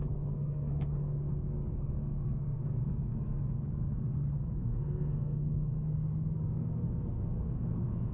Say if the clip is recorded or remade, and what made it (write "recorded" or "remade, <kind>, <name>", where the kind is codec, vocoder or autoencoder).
remade, codec, SNAC